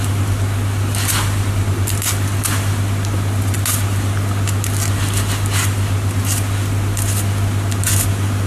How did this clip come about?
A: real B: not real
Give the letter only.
A